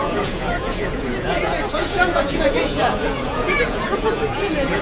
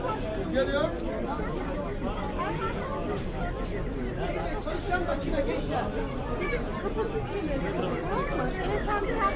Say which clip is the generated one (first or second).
first